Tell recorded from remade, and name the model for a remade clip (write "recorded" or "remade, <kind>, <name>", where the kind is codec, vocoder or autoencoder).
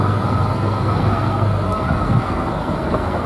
remade, codec, SNAC